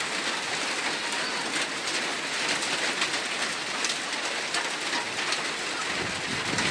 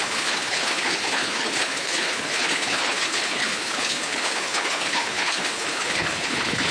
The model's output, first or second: second